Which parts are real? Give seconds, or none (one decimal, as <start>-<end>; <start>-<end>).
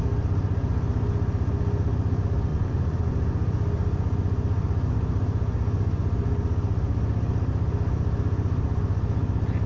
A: 0.0-2.5; 3.1-9.7